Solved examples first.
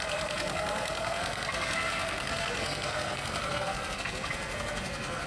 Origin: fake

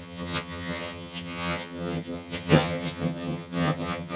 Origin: fake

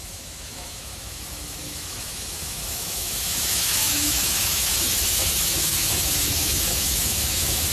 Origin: fake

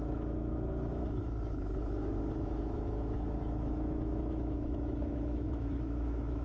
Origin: fake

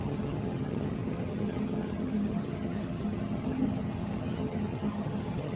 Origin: fake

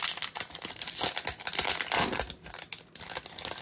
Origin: real